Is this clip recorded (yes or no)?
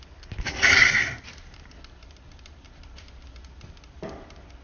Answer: yes